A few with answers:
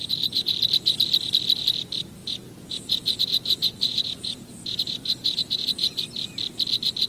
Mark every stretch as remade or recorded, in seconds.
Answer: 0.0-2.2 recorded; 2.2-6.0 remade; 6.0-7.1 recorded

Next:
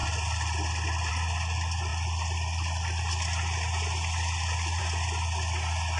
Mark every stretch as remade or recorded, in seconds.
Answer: 0.0-6.0 recorded